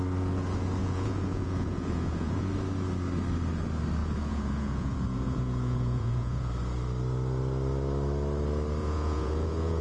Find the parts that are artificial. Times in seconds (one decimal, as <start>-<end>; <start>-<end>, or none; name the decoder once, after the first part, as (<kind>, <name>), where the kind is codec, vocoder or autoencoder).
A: 0.8-2.5 (vocoder, Vocos); 4.0-6.5; 8.8-9.8